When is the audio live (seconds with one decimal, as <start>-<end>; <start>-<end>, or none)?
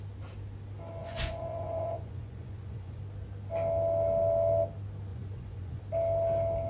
0.0-1.0; 3.0-5.1; 5.8-6.7